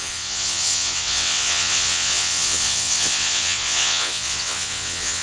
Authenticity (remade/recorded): remade